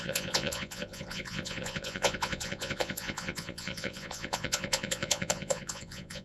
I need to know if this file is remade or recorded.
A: remade